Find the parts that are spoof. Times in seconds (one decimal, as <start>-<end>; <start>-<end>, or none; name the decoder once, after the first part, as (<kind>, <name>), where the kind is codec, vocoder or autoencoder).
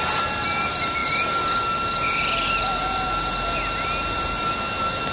none